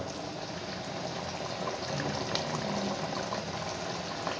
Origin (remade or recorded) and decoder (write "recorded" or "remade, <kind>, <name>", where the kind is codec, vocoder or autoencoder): recorded